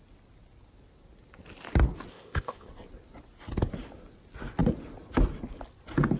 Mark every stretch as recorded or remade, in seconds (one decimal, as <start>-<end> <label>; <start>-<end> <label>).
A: 0.0-2.1 recorded; 2.1-2.7 remade; 2.7-6.2 recorded